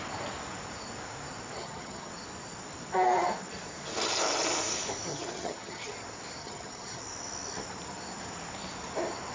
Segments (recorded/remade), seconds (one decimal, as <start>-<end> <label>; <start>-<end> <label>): 0.0-1.6 recorded; 1.6-2.1 remade; 2.1-5.1 recorded; 5.1-5.9 remade; 5.9-6.4 recorded; 6.4-7.0 remade; 7.0-9.3 recorded

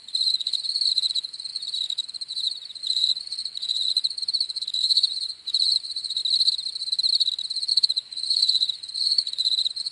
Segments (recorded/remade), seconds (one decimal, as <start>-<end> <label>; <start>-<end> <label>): 0.0-6.2 remade; 6.2-7.7 recorded; 7.7-9.9 remade

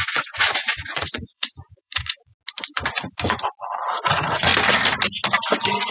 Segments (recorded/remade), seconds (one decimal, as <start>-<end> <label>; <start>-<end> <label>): 0.0-2.3 remade; 2.3-4.1 recorded; 4.1-4.5 remade; 4.5-5.9 recorded

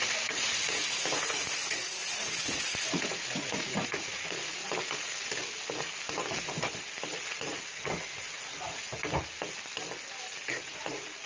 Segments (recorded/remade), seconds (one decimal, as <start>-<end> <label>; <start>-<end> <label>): 0.0-4.6 remade; 4.6-7.3 recorded; 7.3-9.0 remade; 9.0-10.5 recorded; 10.5-11.3 remade

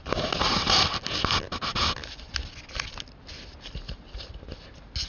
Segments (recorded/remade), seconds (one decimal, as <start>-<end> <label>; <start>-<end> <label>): 0.0-5.1 recorded

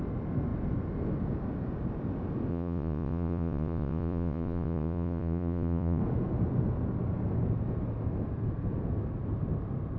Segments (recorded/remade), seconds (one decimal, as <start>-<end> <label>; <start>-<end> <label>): 0.0-2.5 recorded; 2.5-6.0 remade; 6.0-10.0 recorded